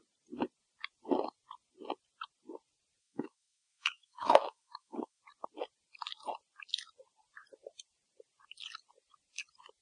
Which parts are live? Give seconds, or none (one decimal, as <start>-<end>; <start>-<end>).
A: 0.0-3.0; 5.2-9.8